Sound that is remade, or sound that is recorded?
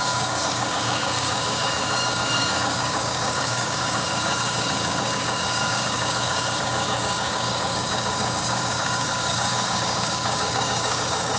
remade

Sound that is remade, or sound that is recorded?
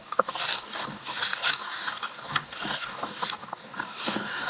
remade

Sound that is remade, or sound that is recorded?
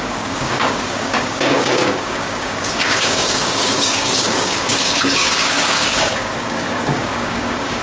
remade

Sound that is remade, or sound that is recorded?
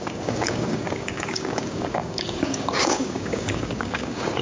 remade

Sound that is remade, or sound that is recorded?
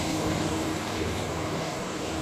remade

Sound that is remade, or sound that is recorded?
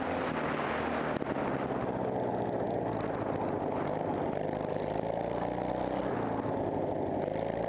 recorded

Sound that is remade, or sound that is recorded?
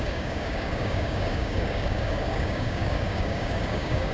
remade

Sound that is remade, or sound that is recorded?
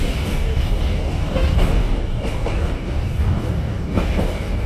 remade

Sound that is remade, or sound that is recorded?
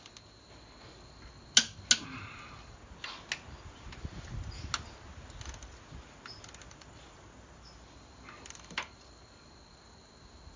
recorded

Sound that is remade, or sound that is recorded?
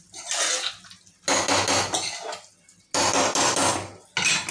recorded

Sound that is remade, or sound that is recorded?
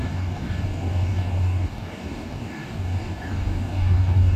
remade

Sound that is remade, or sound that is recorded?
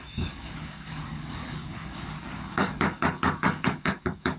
remade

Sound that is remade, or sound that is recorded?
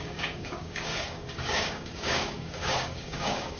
remade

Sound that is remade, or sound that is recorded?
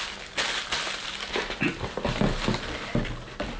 recorded